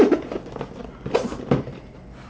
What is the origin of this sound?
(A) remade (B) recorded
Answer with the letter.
B